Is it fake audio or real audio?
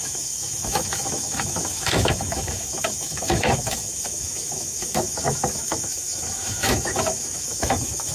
fake